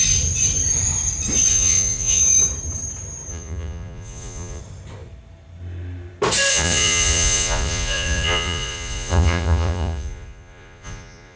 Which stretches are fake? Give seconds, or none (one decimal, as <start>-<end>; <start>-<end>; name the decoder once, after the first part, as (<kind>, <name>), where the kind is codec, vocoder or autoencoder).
1.5-2.2 (vocoder, Vocos); 3.3-4.6; 6.5-11.4